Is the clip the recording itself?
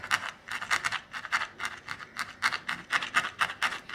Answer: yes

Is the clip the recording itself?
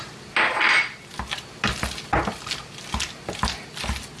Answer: yes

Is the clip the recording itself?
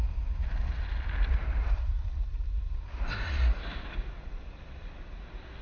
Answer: yes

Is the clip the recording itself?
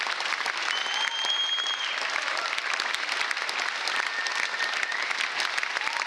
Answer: yes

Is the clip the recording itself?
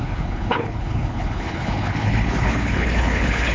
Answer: no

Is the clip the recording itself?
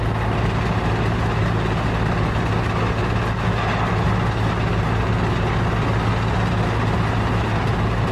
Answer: yes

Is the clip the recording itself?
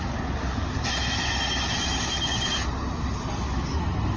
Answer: yes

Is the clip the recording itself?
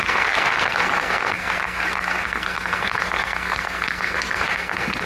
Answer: no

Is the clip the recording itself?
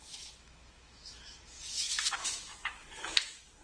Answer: no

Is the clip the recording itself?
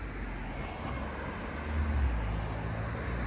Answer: yes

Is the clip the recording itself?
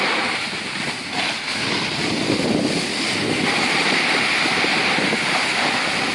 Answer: yes